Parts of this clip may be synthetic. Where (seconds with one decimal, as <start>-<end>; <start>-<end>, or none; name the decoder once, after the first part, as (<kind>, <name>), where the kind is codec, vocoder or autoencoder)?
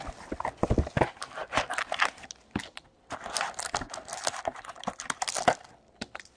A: none